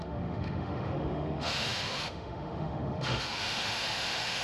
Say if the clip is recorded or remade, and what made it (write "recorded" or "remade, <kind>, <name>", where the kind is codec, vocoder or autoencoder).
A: remade, autoencoder, DAC-VAE